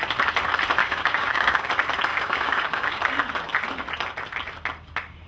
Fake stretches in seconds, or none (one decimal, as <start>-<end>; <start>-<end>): 0.8-1.7; 2.1-3.0